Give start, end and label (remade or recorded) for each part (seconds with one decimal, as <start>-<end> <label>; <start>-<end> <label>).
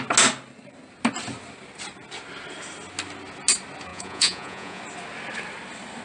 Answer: 0.0-3.9 recorded; 3.9-4.8 remade; 4.8-6.0 recorded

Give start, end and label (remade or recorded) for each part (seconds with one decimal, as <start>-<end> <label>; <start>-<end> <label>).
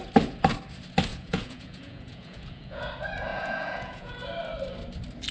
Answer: 0.0-1.1 recorded; 1.1-2.8 remade; 2.8-3.3 recorded; 3.3-4.2 remade; 4.2-5.3 recorded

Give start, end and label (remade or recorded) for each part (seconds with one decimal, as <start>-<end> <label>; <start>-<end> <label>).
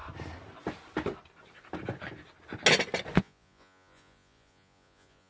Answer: 0.0-3.2 recorded; 3.2-5.3 remade